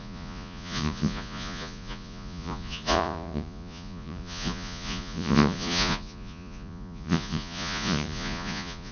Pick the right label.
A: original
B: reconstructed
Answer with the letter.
B